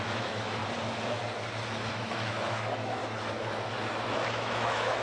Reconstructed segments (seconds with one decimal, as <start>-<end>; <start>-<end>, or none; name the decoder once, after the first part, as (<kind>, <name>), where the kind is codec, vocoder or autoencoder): 0.0-0.6 (autoencoder, DAC-VAE); 1.9-3.0; 4.3-5.0